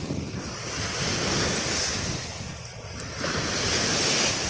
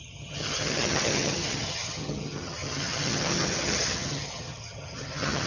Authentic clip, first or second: first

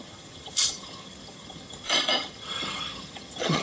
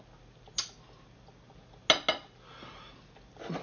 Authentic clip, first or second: second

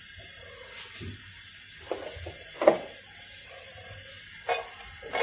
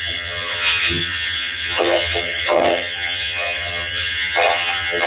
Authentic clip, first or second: first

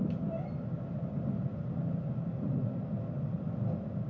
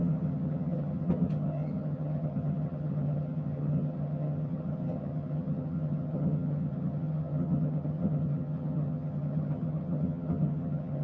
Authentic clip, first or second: first